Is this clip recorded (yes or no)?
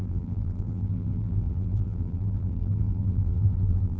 no